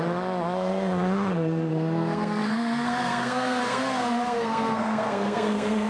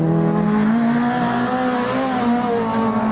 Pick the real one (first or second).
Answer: second